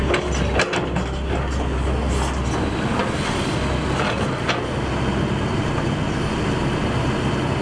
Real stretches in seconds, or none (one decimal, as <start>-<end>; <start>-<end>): 0.0-7.6